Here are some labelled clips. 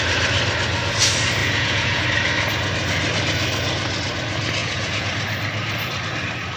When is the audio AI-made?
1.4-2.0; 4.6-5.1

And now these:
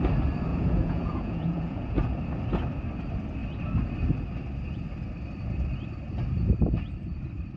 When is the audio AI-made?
0.5-2.2

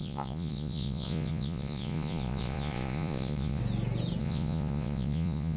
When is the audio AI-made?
0.0-3.6; 4.2-5.6

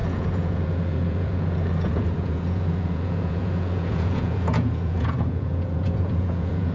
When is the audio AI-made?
0.0-6.7

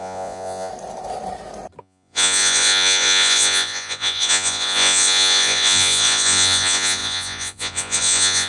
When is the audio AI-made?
0.0-0.7; 1.8-8.5

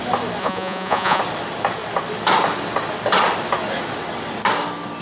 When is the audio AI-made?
0.4-1.2

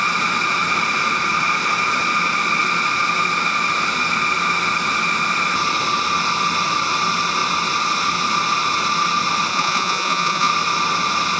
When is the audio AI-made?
9.5-10.5